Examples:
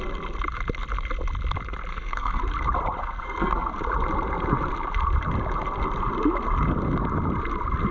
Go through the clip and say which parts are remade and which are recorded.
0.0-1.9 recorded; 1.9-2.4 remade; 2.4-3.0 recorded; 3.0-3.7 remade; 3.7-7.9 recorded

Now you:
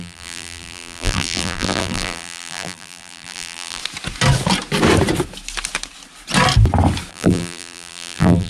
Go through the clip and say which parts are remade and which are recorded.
0.0-3.8 remade; 3.8-7.1 recorded; 7.1-8.5 remade

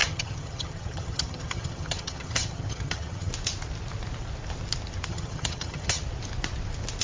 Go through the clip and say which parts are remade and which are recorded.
0.0-3.3 remade; 3.3-5.1 recorded; 5.1-6.0 remade; 6.0-7.0 recorded

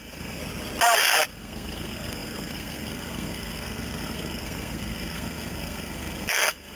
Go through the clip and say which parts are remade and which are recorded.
0.0-0.4 remade; 0.4-1.3 recorded; 1.3-6.8 remade

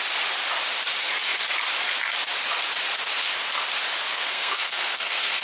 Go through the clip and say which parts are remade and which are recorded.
0.0-4.1 recorded; 4.1-5.4 remade

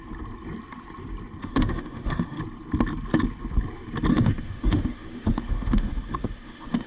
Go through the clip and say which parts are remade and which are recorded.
0.0-1.4 recorded; 1.4-2.4 remade; 2.4-4.1 recorded; 4.1-6.9 remade